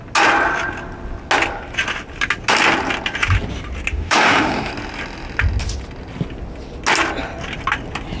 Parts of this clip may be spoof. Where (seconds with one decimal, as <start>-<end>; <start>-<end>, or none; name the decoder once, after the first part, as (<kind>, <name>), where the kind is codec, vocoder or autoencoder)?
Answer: 3.9-4.7 (autoencoder, DAC-VAE)